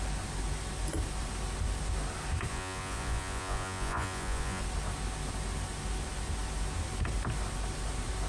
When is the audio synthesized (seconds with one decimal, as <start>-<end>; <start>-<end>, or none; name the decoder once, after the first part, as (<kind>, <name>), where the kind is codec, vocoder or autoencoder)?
2.5-4.6 (vocoder, Vocos)